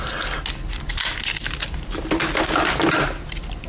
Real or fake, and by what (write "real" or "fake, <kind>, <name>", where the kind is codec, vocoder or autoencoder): real